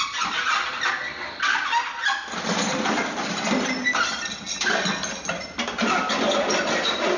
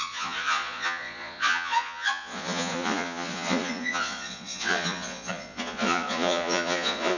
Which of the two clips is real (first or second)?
first